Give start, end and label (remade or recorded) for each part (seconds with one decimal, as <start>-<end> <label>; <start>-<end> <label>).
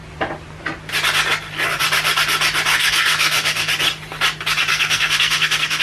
0.0-2.7 recorded; 2.7-3.7 remade; 3.7-4.7 recorded; 4.7-5.8 remade